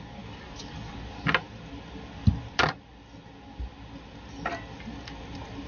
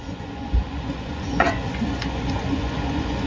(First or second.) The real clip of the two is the first